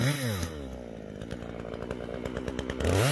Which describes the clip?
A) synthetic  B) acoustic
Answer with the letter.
B